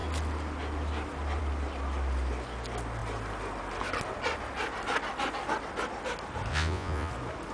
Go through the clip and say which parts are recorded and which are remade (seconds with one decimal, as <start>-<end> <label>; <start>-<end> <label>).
0.0-6.5 recorded; 6.5-7.1 remade; 7.1-7.5 recorded